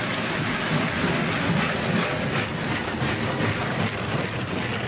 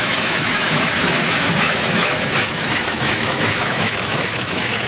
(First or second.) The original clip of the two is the first